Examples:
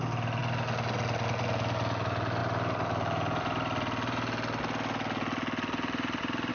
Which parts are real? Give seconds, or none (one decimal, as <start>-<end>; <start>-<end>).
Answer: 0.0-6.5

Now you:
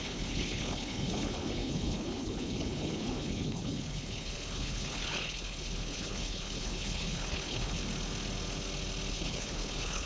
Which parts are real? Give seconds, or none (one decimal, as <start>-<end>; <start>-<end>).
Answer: 7.8-9.1

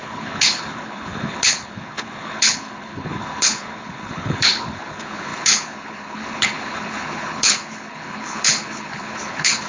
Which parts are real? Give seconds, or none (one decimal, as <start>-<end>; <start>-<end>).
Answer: none

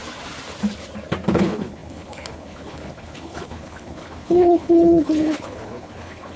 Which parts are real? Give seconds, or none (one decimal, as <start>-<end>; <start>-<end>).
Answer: 0.0-1.3

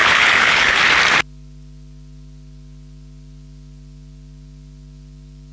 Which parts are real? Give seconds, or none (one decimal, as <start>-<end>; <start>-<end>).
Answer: 0.8-5.5

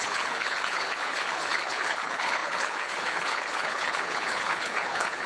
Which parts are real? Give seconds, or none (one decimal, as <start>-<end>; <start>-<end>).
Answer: none

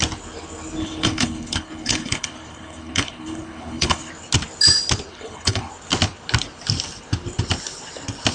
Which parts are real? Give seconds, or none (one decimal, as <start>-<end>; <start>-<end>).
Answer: 0.0-0.8; 4.1-5.1; 5.7-8.3